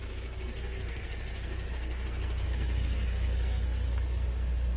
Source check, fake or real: fake